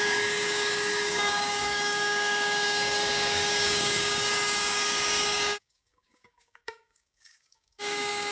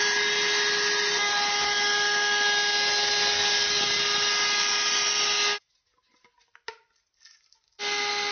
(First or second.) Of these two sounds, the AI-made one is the first